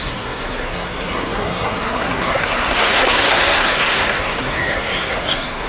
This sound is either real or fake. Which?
fake